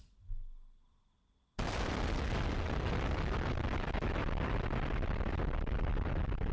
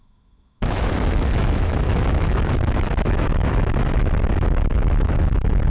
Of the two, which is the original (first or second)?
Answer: first